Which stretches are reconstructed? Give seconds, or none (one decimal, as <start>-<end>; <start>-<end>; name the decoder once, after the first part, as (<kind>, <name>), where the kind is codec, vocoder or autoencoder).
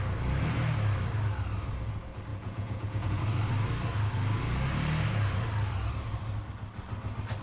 2.3-3.2 (vocoder, Vocos)